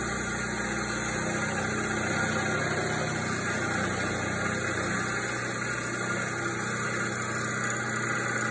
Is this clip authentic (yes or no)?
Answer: yes